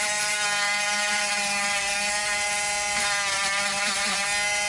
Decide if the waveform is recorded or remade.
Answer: recorded